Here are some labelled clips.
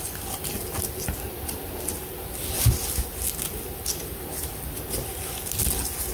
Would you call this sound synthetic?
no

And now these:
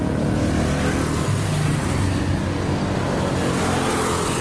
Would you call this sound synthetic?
no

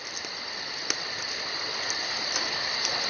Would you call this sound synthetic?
no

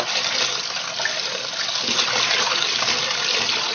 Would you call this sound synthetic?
no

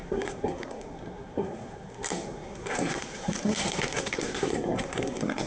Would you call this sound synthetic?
yes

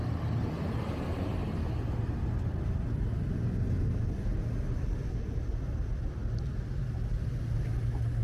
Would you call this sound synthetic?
no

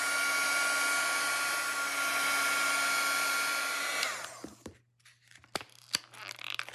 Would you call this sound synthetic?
no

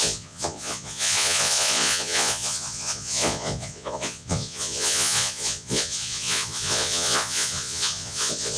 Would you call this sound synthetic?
yes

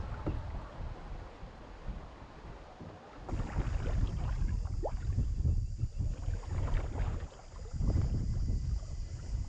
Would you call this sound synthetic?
no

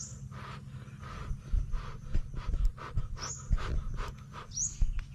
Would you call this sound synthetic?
no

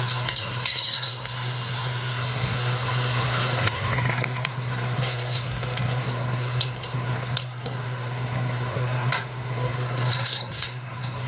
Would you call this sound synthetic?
yes